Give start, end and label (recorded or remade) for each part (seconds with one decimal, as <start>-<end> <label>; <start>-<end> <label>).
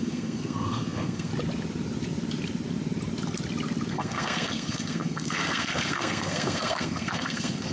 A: 0.0-1.3 remade; 1.3-3.9 recorded; 3.9-7.7 remade